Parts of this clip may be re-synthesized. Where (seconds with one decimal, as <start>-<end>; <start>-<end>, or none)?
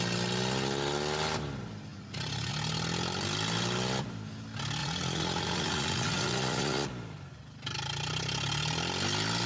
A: 1.9-2.5; 4.8-6.9